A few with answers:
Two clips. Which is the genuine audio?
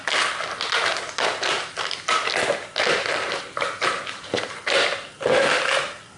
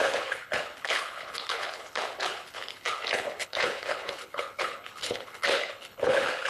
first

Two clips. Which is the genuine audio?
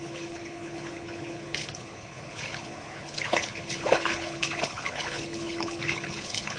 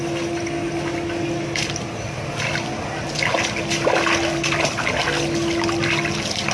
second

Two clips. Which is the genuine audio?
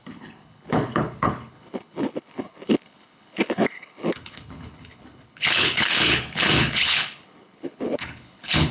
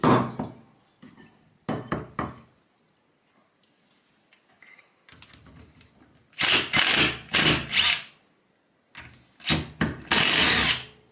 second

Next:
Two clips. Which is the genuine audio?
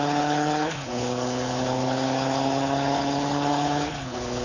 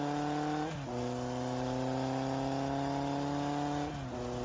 second